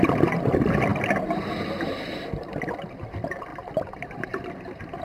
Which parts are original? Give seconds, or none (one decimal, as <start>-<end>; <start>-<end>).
0.0-3.5